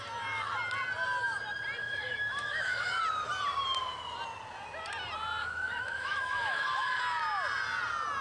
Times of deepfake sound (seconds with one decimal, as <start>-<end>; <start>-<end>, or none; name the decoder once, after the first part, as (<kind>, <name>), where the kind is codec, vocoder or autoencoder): 1.8-3.0 (autoencoder, DAC-VAE); 5.4-7.0